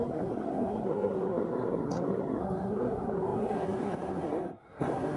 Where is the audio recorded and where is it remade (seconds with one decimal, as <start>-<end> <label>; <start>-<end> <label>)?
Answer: 0.0-5.2 remade